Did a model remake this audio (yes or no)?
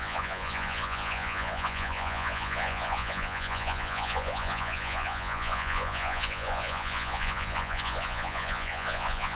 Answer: yes